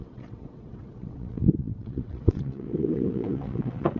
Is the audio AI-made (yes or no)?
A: yes